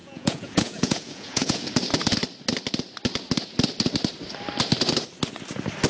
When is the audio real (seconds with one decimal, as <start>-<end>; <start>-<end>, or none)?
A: 1.6-5.9